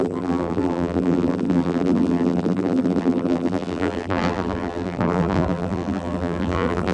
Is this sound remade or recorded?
remade